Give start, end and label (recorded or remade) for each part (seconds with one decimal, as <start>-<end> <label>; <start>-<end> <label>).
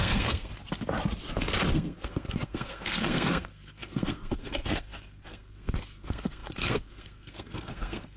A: 0.0-0.5 remade; 0.5-1.7 recorded; 1.7-8.2 remade